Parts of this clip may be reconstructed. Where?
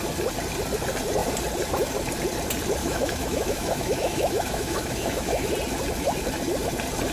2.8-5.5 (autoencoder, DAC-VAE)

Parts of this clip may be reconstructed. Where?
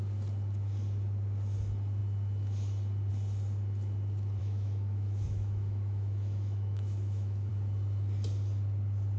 4.4-7.5 (autoencoder, DAC-VAE)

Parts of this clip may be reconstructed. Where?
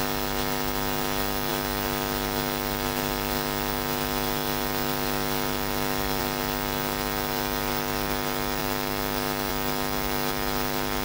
0.0-11.0 (autoencoder, DAC-VAE)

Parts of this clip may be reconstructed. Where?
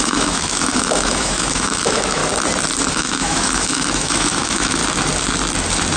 0.0-2.2 (autoencoder, DAC-VAE); 2.9-4.8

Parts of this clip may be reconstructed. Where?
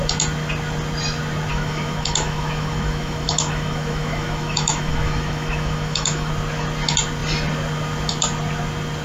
1.5-6.3 (autoencoder, DAC-VAE)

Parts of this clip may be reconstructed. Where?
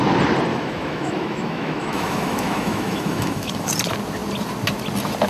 0.5-3.7 (autoencoder, DAC-VAE)